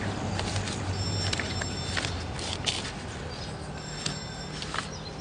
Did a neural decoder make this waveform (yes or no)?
no